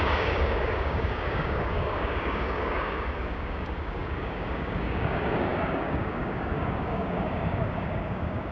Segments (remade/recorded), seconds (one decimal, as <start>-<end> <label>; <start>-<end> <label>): 0.0-8.5 remade

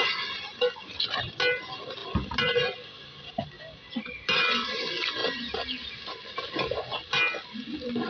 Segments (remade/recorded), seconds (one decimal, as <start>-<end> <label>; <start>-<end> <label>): 0.0-8.1 recorded

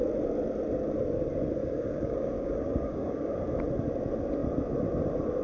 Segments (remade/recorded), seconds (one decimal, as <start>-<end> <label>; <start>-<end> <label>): 0.0-1.6 recorded; 1.6-3.4 remade; 3.4-5.4 recorded

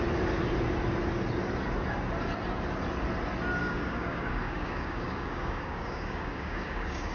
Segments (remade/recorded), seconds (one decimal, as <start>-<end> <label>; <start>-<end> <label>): 0.0-3.6 recorded; 3.6-7.1 remade

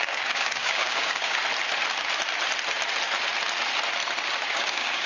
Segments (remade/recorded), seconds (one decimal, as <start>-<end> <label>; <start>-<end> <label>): 0.0-1.4 remade; 1.4-4.5 recorded; 4.5-5.1 remade

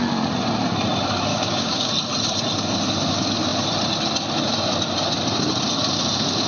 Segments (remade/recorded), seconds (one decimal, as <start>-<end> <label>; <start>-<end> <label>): 0.0-1.3 recorded; 1.3-1.9 remade; 1.9-6.5 recorded

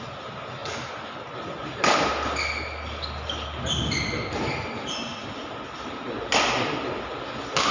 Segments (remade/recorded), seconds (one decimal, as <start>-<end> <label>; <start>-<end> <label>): 0.0-7.7 recorded